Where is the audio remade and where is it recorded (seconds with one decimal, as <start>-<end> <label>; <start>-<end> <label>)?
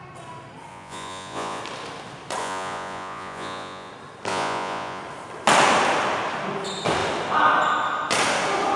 0.0-0.7 recorded; 0.7-1.6 remade; 1.6-2.4 recorded; 2.4-3.9 remade; 3.9-4.3 recorded; 4.3-5.0 remade; 5.0-8.8 recorded